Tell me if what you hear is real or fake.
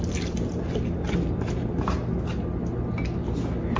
real